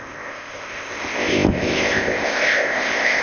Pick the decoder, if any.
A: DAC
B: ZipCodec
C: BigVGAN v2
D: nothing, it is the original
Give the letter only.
B